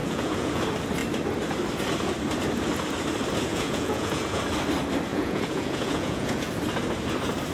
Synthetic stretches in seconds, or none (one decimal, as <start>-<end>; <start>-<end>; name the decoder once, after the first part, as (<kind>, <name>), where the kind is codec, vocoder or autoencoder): 0.0-0.6 (vocoder, Vocos); 3.5-4.4; 5.1-6.5